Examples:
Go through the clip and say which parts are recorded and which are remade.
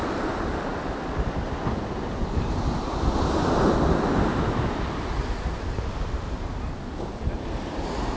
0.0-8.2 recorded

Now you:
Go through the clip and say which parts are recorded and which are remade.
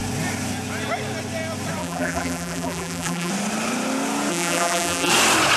0.0-1.8 recorded; 1.8-3.3 remade; 3.3-4.3 recorded; 4.3-5.1 remade; 5.1-5.6 recorded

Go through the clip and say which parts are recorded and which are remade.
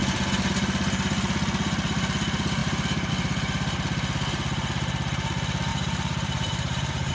0.0-2.6 recorded; 2.6-3.1 remade; 3.1-5.7 recorded; 5.7-7.1 remade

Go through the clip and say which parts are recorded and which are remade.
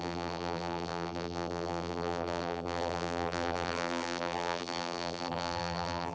0.0-6.1 remade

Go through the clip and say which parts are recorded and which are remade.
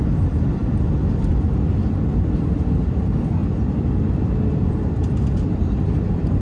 0.0-0.6 remade; 0.6-1.3 recorded; 1.3-3.4 remade; 3.4-4.6 recorded; 4.6-6.4 remade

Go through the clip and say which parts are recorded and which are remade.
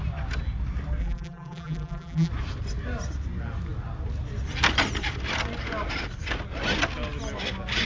0.0-1.0 recorded; 1.0-2.3 remade; 2.3-7.8 recorded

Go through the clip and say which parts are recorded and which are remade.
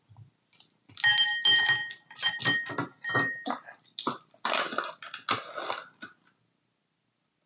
0.0-7.5 recorded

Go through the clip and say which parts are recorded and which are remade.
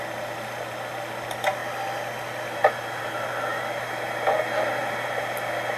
0.0-5.8 recorded